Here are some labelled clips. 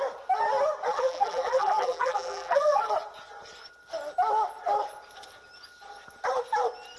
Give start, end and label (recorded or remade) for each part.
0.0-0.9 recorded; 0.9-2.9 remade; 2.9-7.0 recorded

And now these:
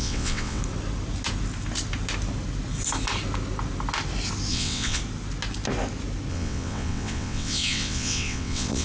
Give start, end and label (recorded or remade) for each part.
0.0-0.6 remade; 0.6-4.5 recorded; 4.5-5.0 remade; 5.0-6.3 recorded; 6.3-8.8 remade

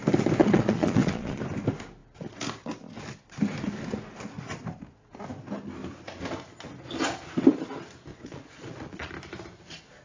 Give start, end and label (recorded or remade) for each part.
0.0-0.4 recorded; 0.4-1.4 remade; 1.4-8.1 recorded; 8.1-9.1 remade; 9.1-10.0 recorded

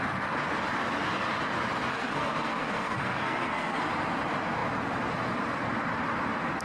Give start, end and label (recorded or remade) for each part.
0.0-1.9 recorded; 1.9-3.9 remade; 3.9-6.6 recorded

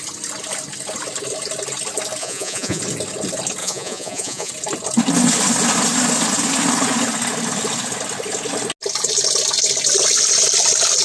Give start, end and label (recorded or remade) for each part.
0.0-2.2 recorded; 2.2-2.8 remade; 2.8-3.6 recorded; 3.6-4.5 remade; 4.5-11.0 recorded

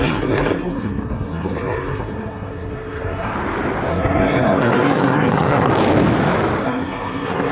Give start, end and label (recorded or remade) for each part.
0.0-3.3 remade; 3.3-3.9 recorded; 3.9-5.7 remade; 5.7-6.6 recorded; 6.6-7.5 remade

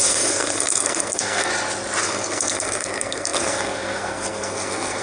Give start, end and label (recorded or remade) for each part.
0.0-1.5 remade; 1.5-2.0 recorded; 2.0-5.0 remade

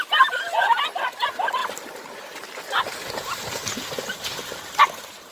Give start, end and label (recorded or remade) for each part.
0.0-1.6 recorded; 1.6-4.8 remade; 4.8-5.3 recorded